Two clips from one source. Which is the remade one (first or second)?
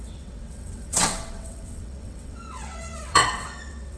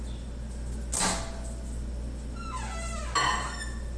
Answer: first